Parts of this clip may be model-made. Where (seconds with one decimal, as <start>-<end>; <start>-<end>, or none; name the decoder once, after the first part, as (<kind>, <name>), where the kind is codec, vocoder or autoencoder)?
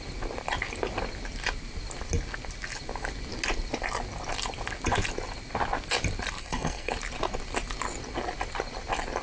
6.4-6.9 (codec, SNAC)